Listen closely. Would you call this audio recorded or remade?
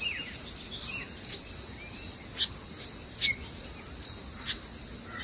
recorded